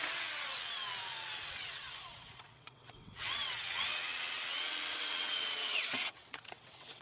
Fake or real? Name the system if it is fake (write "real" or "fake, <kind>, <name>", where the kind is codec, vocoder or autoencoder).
fake, vocoder, WaveNeXt